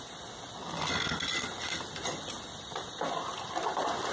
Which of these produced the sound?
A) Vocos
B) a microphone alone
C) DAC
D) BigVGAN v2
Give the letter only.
B